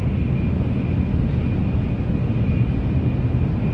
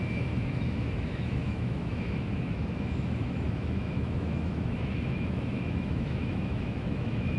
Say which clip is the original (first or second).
first